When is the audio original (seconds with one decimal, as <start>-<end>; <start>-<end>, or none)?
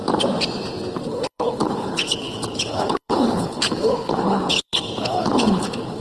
0.0-1.0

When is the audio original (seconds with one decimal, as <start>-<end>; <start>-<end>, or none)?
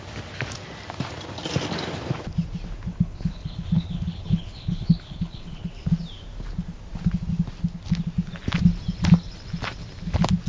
0.0-2.9; 5.7-10.5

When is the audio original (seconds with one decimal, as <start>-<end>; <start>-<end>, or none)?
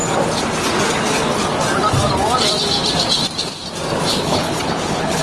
0.0-4.1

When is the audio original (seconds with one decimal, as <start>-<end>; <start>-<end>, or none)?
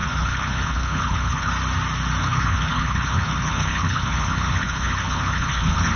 1.5-2.2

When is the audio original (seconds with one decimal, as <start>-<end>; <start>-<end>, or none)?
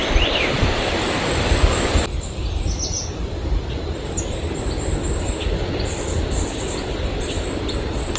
0.0-8.2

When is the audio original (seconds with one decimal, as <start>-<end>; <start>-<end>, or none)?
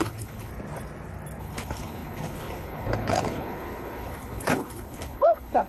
0.5-1.4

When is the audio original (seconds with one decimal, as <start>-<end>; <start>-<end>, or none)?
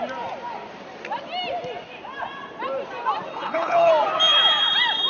0.0-3.3; 3.9-5.1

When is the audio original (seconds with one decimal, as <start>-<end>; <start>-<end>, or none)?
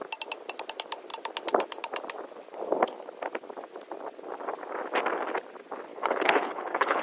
0.0-5.9